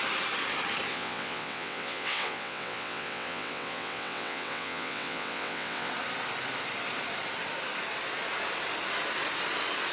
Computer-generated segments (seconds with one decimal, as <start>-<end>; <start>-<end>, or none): 0.9-5.9